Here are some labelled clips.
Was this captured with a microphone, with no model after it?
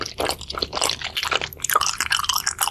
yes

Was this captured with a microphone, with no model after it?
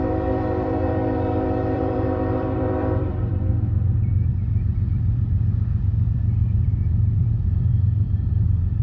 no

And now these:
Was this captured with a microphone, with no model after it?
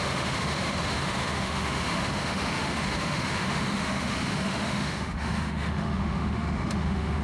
no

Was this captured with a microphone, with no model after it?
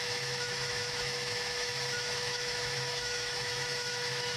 no